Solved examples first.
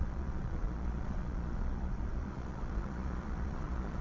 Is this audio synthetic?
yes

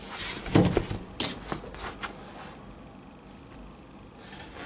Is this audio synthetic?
no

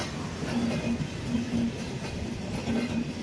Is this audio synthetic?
no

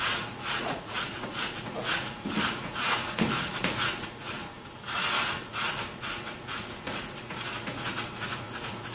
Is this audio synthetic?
yes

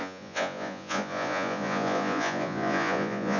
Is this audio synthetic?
yes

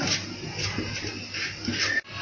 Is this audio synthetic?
no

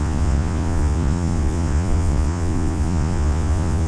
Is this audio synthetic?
yes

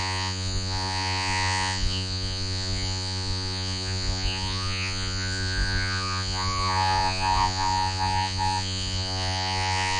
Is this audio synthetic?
yes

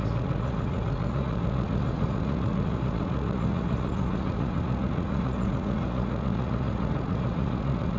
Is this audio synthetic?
yes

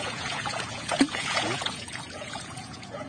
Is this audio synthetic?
yes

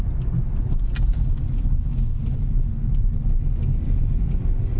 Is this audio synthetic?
no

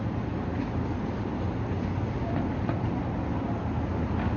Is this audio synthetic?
no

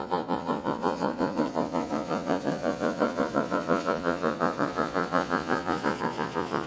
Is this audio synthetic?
yes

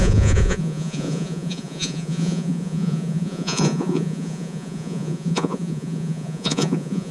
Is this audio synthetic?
yes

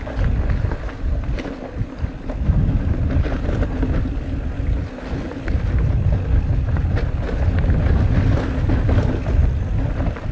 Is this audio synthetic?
no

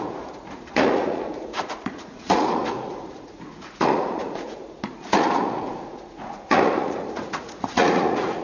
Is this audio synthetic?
yes